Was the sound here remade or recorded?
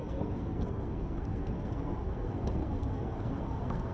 remade